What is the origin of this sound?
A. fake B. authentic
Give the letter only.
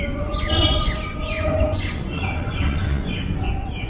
A